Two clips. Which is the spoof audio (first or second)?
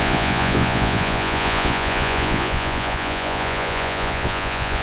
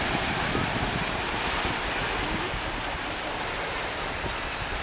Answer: first